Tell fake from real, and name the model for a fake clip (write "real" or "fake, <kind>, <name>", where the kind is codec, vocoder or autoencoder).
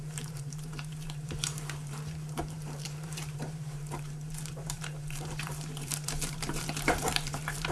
fake, vocoder, BigVGAN v2